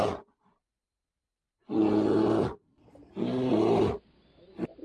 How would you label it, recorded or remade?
recorded